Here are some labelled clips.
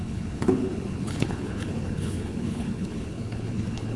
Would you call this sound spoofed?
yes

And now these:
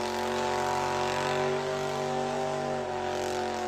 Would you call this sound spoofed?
no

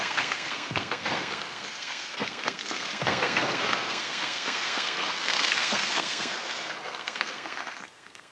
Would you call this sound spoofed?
yes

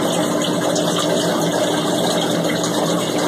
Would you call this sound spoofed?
no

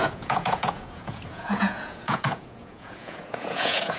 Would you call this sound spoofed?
yes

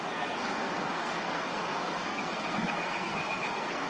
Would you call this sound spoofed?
yes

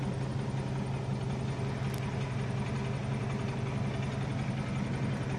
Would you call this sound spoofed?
no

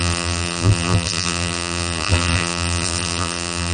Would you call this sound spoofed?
yes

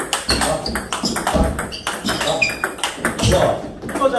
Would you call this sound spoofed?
no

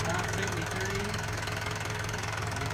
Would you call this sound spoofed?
yes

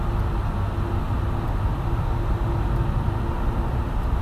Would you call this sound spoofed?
no